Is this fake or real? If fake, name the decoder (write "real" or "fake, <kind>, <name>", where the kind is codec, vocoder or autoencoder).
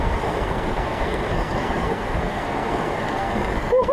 fake, codec, SNAC